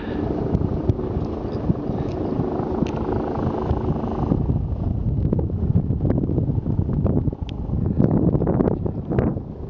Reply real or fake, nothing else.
real